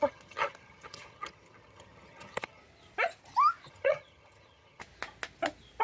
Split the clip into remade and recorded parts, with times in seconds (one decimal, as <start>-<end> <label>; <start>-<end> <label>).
0.0-2.6 remade; 2.6-3.7 recorded; 3.7-4.8 remade; 4.8-5.8 recorded